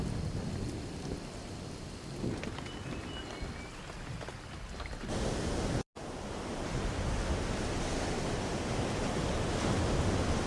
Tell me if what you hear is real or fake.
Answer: real